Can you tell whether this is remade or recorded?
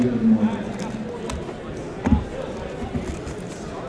recorded